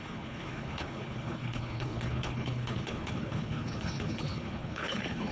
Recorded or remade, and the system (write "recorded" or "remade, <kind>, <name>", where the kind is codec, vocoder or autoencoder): remade, codec, HILCodec